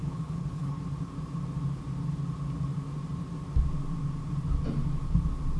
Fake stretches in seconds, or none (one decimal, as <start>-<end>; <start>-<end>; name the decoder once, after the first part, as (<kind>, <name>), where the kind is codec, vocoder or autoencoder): 0.0-0.8 (codec, HILCodec)